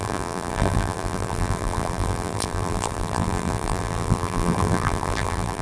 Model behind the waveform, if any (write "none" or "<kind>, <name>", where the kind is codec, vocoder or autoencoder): vocoder, BigVGAN v2